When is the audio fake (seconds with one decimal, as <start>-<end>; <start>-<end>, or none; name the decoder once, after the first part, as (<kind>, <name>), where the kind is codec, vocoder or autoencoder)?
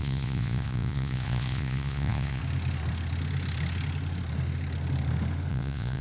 0.0-2.4 (vocoder, Vocos); 5.5-6.0